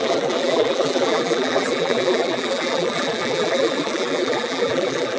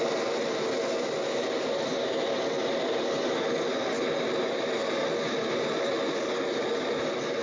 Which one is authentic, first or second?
second